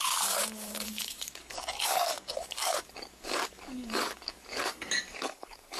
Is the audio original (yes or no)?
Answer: no